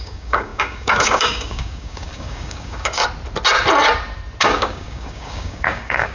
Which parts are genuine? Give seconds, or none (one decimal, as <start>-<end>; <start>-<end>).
3.0-4.4

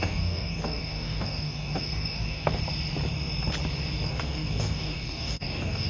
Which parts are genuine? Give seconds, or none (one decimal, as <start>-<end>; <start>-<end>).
2.6-4.1

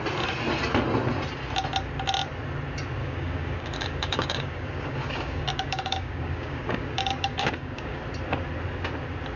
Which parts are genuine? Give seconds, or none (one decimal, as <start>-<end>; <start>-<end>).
0.0-3.0; 8.0-9.4

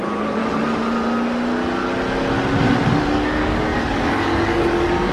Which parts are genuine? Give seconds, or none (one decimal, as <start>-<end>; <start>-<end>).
0.4-3.0

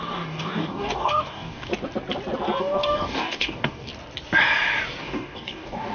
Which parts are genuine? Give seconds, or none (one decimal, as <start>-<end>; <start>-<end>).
1.7-2.6; 3.9-5.0

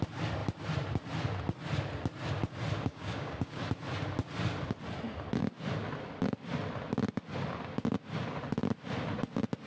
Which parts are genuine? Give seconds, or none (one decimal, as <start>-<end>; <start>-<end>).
0.0-2.9; 3.6-9.7